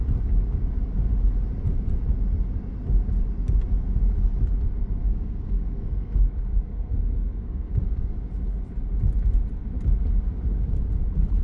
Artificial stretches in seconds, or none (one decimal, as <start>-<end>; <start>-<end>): 5.0-7.7